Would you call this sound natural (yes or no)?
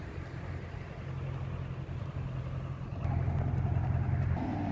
yes